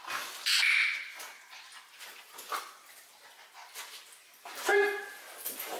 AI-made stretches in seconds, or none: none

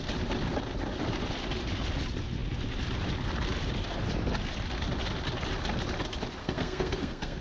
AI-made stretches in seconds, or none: 6.4-7.4

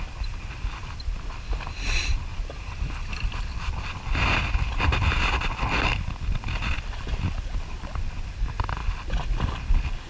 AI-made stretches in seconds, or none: none

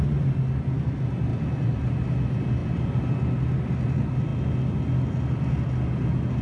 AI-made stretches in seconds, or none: none

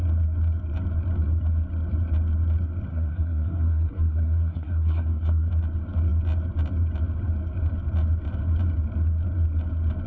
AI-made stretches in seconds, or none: 2.9-5.5

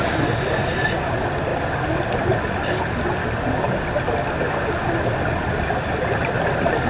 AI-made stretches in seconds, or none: none

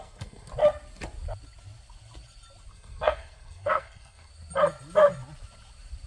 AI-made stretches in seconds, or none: 0.0-0.5; 2.7-4.3

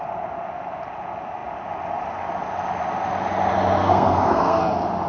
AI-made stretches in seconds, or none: 3.8-4.6